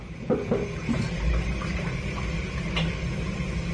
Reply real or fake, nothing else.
real